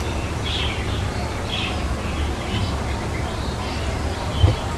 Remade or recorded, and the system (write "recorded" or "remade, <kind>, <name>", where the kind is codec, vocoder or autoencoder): recorded